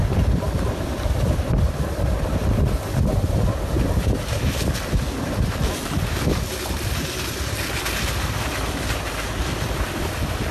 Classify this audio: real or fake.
fake